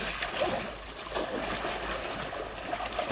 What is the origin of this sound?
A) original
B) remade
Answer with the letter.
A